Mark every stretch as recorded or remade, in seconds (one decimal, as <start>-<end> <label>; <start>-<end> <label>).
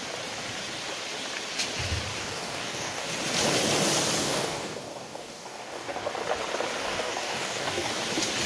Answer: 0.0-2.2 recorded; 2.2-3.1 remade; 3.1-4.2 recorded; 4.2-6.1 remade; 6.1-6.8 recorded; 6.8-8.0 remade; 8.0-8.5 recorded